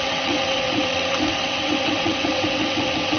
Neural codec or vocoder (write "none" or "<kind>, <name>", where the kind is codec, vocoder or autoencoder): vocoder, WaveNeXt